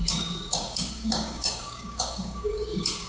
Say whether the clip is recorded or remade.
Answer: remade